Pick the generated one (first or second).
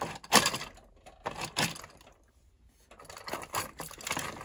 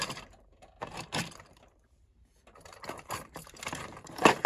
second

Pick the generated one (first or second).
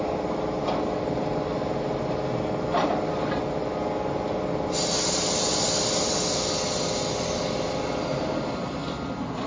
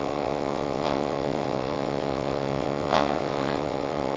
second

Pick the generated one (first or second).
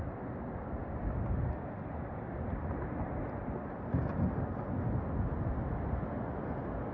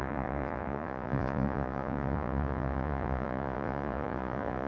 second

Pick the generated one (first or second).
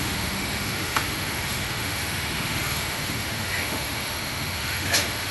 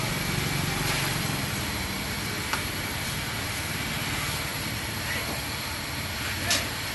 first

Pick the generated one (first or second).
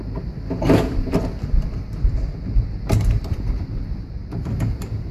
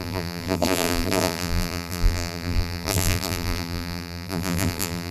second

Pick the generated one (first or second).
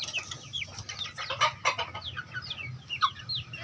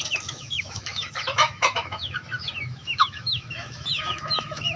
second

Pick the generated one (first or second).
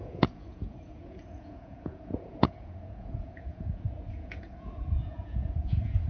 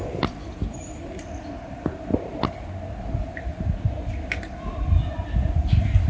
first